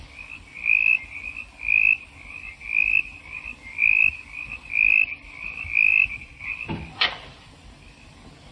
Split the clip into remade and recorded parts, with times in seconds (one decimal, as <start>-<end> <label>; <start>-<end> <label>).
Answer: 0.0-6.0 recorded; 6.0-7.5 remade; 7.5-8.5 recorded